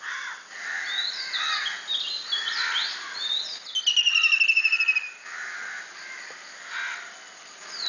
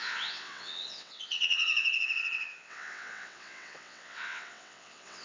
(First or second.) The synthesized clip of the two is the second